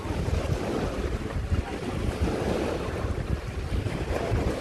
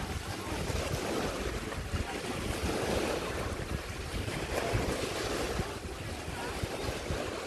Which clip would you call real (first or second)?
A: second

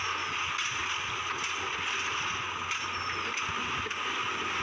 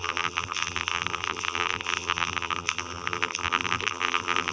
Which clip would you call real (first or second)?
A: first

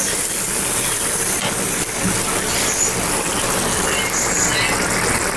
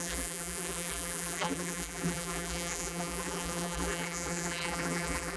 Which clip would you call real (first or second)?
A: first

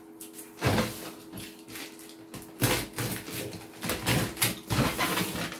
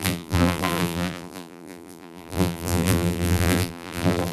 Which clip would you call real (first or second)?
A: first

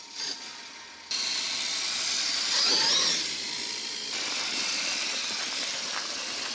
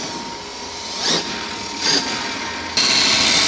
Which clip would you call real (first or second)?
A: second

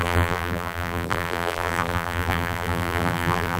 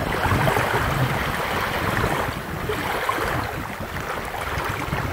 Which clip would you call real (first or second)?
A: second